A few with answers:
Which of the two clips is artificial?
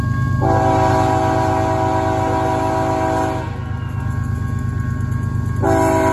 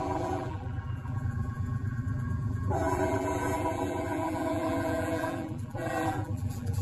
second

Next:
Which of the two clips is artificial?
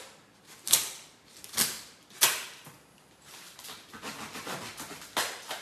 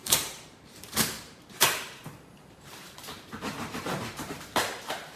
second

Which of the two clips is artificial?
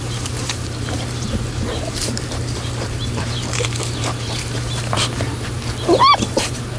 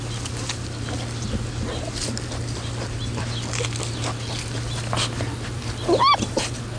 first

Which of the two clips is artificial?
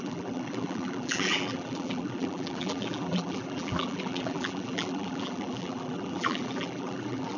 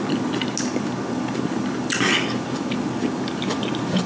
first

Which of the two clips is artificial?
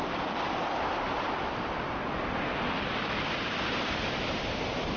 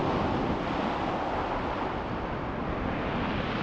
first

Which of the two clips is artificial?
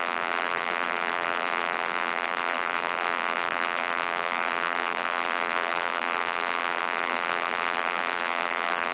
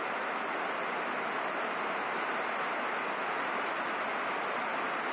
first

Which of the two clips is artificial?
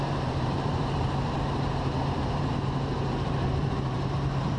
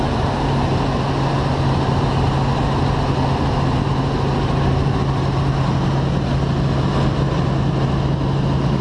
first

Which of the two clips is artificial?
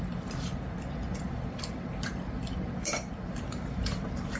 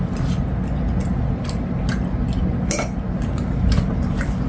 first